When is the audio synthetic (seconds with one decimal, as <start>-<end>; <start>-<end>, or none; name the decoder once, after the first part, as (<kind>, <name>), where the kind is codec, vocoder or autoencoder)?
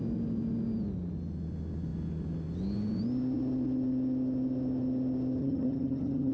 5.4-6.3 (vocoder, HiFi-GAN)